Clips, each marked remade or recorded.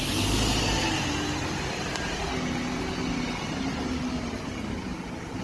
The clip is recorded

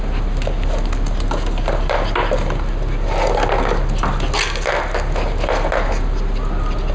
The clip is recorded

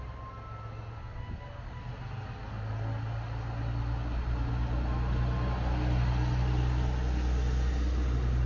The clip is recorded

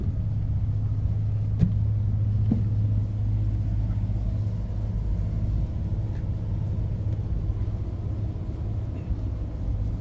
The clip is recorded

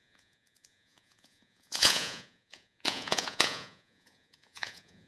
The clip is remade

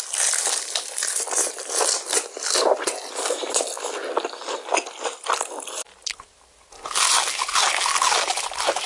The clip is recorded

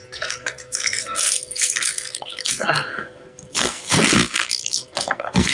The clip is remade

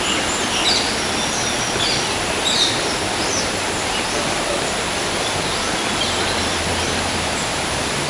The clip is remade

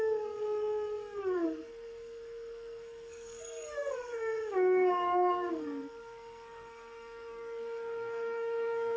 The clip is remade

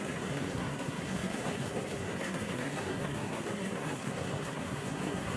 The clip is remade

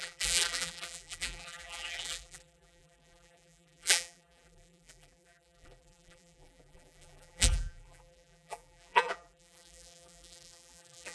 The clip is remade